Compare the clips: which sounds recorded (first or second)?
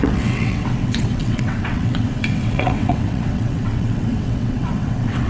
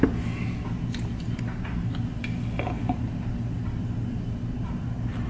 second